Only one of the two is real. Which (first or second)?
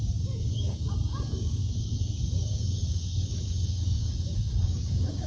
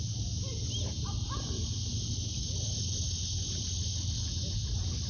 second